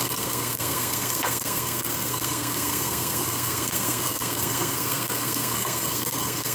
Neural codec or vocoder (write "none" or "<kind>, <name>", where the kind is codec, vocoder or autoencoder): codec, SNAC